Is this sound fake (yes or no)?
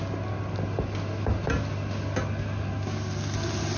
no